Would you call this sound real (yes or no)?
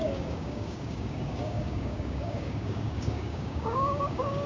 no